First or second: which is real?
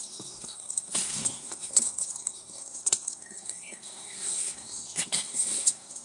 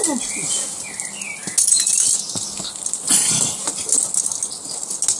second